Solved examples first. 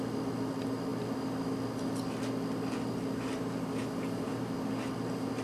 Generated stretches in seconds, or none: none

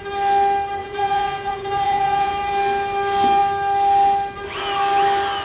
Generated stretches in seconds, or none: 0.8-2.5 (vocoder, Vocos)

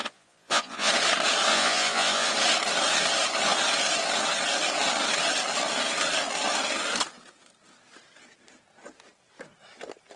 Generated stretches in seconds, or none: 0.0-0.9 (vocoder, Vocos); 1.5-2.3